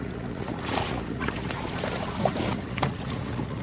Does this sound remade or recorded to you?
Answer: remade